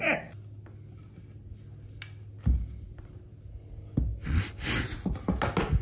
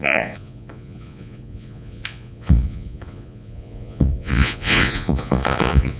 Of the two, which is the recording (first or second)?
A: first